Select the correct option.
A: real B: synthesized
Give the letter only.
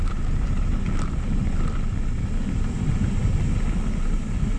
A